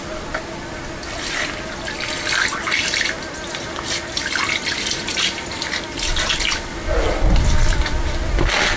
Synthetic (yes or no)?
no